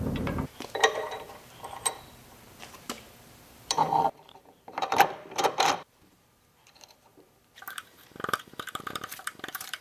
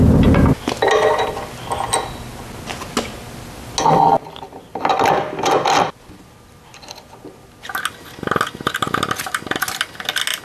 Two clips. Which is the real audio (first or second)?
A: second